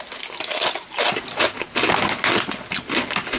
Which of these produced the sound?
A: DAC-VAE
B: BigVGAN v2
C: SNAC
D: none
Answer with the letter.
D